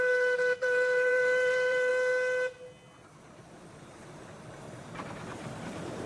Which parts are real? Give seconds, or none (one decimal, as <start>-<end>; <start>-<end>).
1.9-5.6